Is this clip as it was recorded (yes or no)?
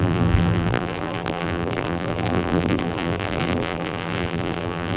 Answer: no